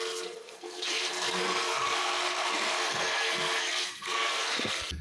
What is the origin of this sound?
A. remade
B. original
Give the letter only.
A